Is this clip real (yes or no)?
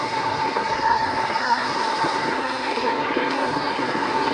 no